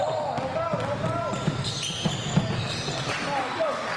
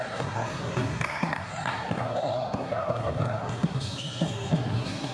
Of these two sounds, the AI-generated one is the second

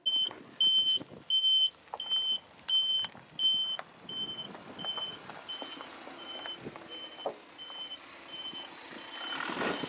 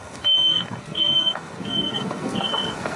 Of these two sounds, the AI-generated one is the second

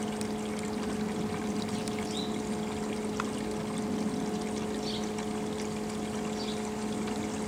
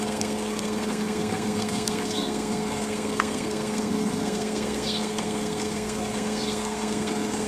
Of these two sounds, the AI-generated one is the second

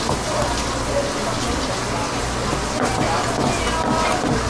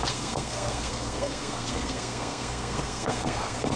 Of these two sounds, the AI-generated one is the second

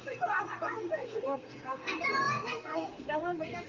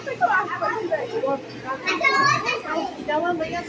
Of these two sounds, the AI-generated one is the first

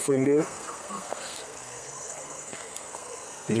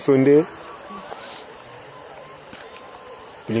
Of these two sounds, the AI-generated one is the first